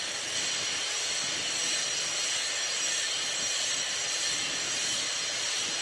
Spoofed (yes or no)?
no